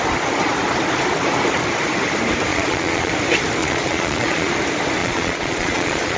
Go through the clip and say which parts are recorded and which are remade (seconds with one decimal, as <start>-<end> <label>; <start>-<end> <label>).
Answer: 0.0-2.5 recorded; 2.5-3.1 remade; 3.1-3.6 recorded; 3.6-4.5 remade; 4.5-5.0 recorded; 5.0-6.2 remade